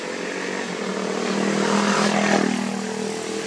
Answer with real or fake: real